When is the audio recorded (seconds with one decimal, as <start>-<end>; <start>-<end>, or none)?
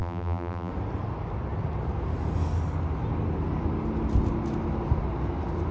0.7-5.7